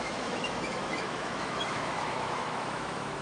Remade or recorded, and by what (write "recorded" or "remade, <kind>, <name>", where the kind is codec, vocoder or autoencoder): remade, autoencoder, DAC-VAE